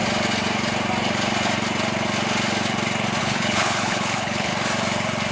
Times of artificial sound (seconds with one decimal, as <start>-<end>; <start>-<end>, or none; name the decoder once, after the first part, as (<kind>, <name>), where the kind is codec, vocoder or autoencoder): 3.2-4.5 (codec, HILCodec)